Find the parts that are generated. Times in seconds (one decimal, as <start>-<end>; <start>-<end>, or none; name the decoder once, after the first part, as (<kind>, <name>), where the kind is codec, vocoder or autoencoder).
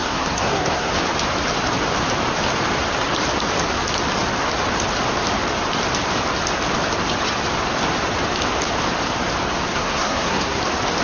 0.0-0.9 (codec, SNAC); 9.7-10.6